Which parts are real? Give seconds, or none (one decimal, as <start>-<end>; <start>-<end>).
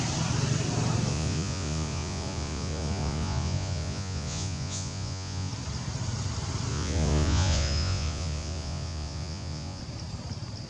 0.0-1.1; 5.5-6.7; 9.8-10.7